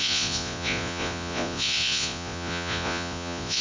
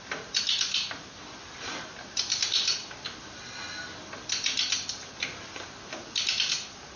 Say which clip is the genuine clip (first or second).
second